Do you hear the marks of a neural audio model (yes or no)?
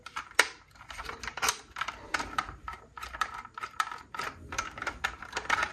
yes